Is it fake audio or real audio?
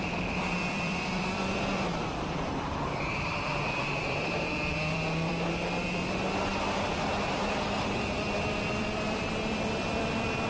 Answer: fake